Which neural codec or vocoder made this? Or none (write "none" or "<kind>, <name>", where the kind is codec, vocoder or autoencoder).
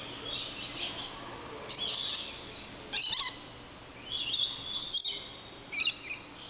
none